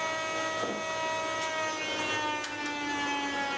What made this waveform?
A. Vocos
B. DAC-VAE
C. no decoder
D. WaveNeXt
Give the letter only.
C